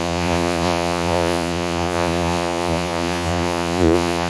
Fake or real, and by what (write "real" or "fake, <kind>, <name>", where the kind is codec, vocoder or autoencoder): fake, vocoder, Vocos